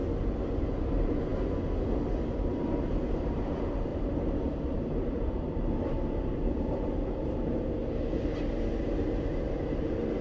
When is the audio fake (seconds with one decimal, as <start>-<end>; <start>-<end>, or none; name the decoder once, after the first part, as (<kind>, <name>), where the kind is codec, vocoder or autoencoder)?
0.5-1.3 (vocoder, BigVGAN v2); 2.5-7.8; 9.3-10.2